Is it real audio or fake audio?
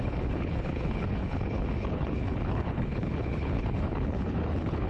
fake